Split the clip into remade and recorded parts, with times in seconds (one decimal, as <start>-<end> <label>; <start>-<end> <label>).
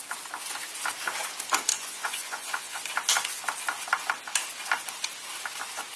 0.0-1.7 recorded; 1.7-2.8 remade; 2.8-6.0 recorded